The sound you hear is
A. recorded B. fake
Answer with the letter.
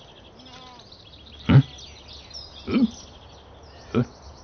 A